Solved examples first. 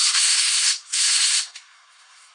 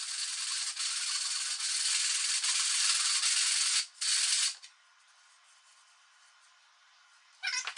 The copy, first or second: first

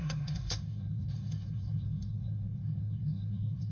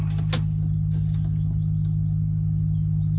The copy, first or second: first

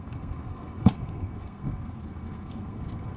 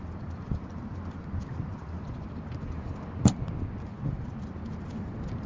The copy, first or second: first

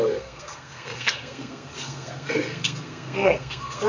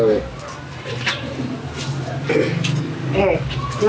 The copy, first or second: first